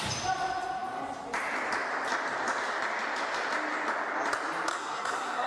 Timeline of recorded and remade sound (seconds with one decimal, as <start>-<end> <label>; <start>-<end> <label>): 0.0-4.7 recorded; 4.7-5.5 remade